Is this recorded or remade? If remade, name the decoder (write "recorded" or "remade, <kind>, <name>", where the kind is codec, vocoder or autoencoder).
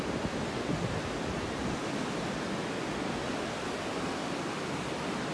recorded